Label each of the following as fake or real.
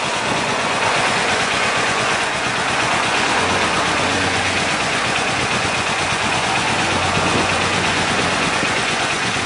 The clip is fake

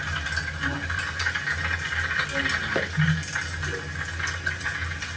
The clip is real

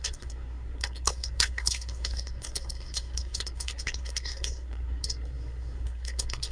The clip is fake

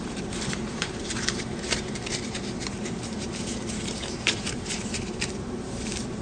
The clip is fake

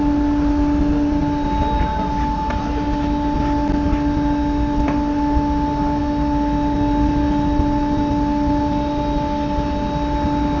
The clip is real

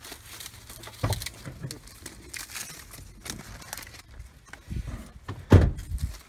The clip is real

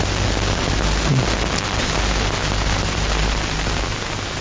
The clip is real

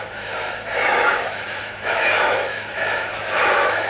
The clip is fake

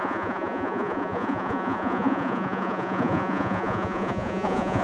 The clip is fake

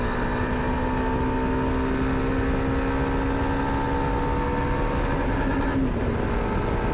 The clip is real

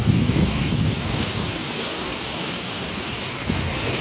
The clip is fake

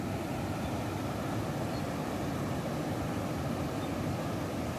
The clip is real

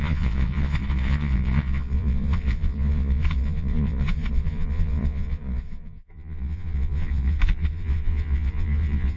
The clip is fake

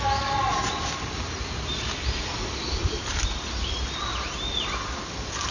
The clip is real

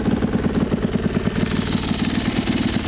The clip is real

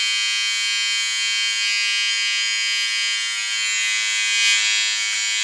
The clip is real